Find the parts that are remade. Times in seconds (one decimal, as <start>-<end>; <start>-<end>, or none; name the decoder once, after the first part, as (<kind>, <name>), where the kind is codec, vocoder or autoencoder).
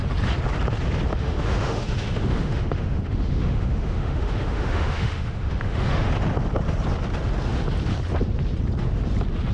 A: 1.1-6.1 (autoencoder, DAC-VAE)